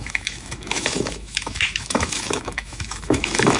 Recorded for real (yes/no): no